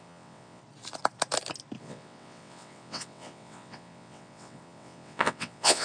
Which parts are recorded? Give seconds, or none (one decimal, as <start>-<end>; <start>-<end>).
0.6-1.8